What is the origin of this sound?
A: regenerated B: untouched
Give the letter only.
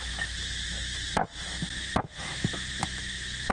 A